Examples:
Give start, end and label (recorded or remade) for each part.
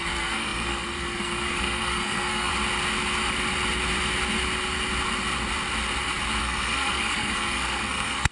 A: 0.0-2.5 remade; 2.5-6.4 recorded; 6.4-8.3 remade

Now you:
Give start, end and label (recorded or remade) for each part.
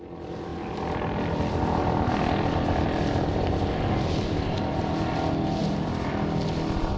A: 0.0-7.0 recorded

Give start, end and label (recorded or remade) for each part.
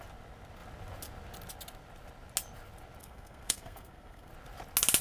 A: 0.0-3.0 recorded; 3.0-4.3 remade; 4.3-5.0 recorded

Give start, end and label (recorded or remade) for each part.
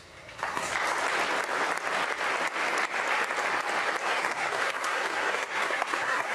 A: 0.0-0.7 remade; 0.7-4.0 recorded; 4.0-6.3 remade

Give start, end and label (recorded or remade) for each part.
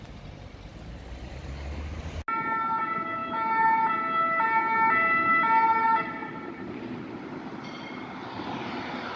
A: 0.0-9.2 recorded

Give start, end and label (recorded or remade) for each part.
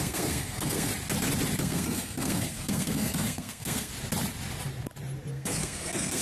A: 0.0-0.9 remade; 0.9-1.6 recorded; 1.6-3.9 remade; 3.9-5.3 recorded; 5.3-6.2 remade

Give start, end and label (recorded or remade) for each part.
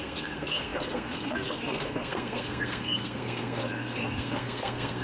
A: 0.0-5.0 remade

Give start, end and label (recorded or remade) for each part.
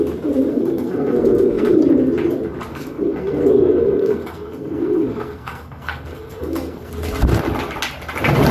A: 0.0-0.5 recorded; 0.5-1.8 remade; 1.8-2.7 recorded; 2.7-6.9 remade; 6.9-8.5 recorded